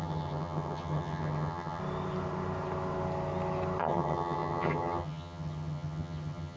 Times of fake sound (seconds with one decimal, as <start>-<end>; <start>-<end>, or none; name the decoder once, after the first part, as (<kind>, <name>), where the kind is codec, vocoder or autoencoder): 0.0-1.8 (vocoder, HiFi-GAN); 3.8-6.6